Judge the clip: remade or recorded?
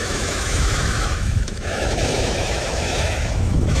remade